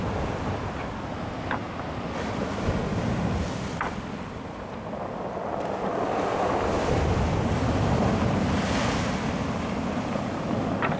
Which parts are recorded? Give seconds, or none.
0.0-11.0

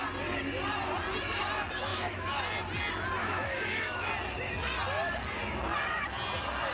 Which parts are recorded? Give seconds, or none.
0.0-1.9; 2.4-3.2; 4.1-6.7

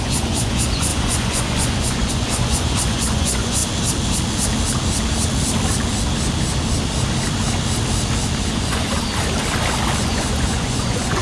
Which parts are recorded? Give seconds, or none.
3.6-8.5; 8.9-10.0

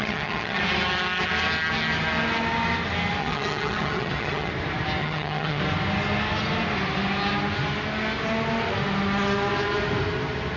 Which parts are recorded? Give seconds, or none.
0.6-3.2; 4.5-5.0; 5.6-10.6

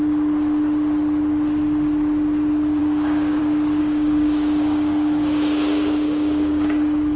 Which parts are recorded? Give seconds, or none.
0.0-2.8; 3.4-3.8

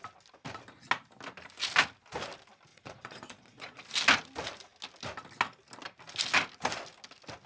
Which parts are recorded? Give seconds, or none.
0.0-2.7; 3.8-7.5

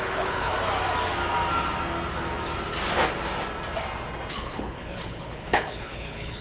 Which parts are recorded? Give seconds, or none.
0.5-4.3